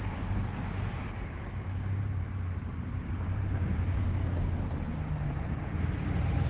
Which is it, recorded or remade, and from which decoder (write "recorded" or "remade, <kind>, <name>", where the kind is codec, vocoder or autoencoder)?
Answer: remade, vocoder, BigVGAN v2